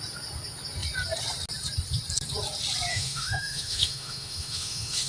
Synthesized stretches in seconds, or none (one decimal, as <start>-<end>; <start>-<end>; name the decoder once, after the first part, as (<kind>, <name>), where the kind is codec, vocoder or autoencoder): 2.9-5.1 (autoencoder, DAC-VAE)